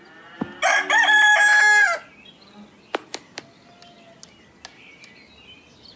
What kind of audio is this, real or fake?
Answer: real